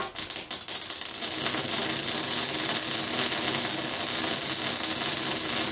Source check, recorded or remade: recorded